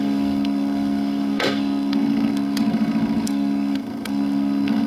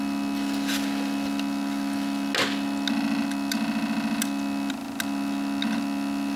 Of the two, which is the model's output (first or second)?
first